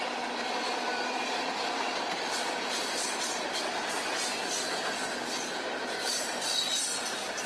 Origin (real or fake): fake